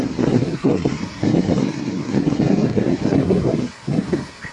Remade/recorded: remade